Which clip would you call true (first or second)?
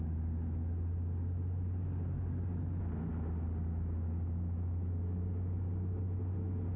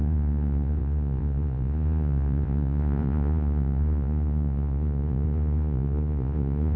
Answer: first